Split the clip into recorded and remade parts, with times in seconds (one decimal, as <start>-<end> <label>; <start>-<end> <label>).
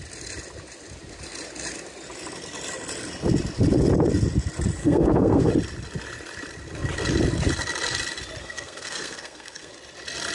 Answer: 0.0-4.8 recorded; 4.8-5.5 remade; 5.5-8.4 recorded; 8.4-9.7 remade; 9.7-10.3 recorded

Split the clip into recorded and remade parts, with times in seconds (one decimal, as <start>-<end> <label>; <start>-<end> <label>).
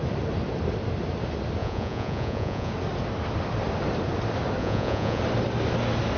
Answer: 0.0-1.6 recorded; 1.6-2.7 remade; 2.7-4.6 recorded; 4.6-5.2 remade; 5.2-6.2 recorded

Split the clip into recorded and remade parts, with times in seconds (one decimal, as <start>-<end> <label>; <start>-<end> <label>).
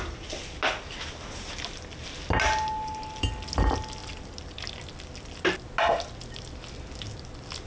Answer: 0.0-7.7 recorded